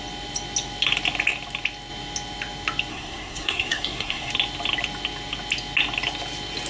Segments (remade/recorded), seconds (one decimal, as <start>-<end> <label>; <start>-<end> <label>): 0.0-2.9 recorded; 2.9-4.3 remade; 4.3-6.7 recorded